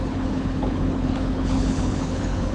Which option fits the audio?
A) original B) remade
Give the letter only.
B